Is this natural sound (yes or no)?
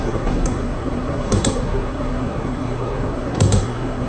no